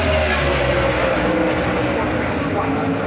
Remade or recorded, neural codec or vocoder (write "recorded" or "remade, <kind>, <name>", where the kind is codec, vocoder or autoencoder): recorded